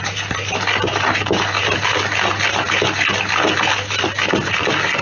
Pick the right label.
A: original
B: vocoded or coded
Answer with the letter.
A